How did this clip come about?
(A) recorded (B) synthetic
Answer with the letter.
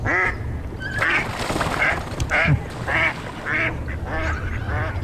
A